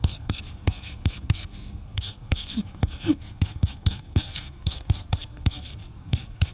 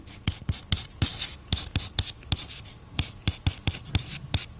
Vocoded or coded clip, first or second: first